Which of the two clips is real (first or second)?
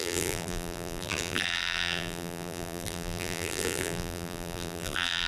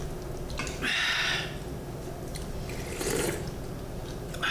second